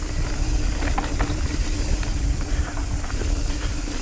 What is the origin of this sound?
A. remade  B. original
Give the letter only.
B